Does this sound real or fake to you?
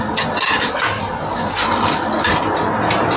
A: real